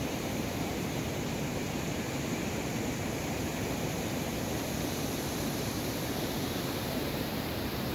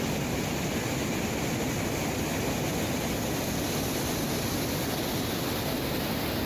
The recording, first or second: second